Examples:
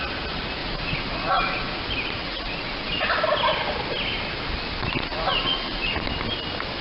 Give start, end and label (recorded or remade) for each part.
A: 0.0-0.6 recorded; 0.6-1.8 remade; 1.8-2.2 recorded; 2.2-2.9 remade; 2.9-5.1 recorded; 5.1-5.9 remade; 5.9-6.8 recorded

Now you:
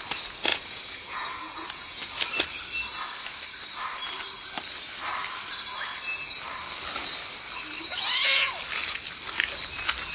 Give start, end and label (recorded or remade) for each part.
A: 0.0-0.5 recorded; 0.5-2.1 remade; 2.1-7.9 recorded; 7.9-8.5 remade; 8.5-10.1 recorded

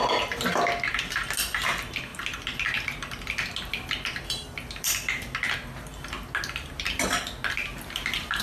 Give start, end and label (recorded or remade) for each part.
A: 0.0-8.4 recorded

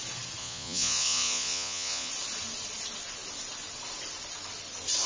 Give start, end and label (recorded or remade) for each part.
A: 0.0-0.4 recorded; 0.4-2.1 remade; 2.1-5.1 recorded

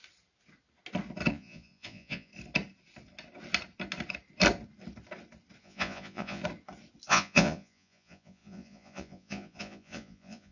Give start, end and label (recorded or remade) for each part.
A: 0.0-1.3 recorded; 1.3-2.3 remade; 2.3-5.6 recorded; 5.6-6.4 remade; 6.4-7.1 recorded; 7.1-10.5 remade

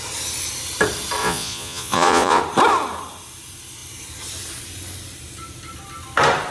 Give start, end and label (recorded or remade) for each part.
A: 0.0-1.2 recorded; 1.2-2.4 remade; 2.4-6.5 recorded

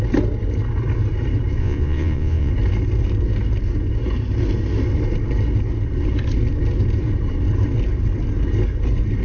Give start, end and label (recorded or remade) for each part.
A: 0.0-1.6 recorded; 1.6-2.5 remade; 2.5-9.2 recorded

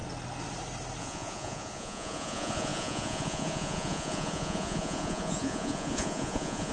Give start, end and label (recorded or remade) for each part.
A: 0.0-1.0 recorded; 1.0-6.7 remade